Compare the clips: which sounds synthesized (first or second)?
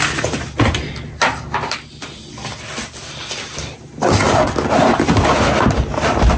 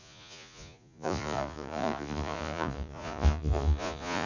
second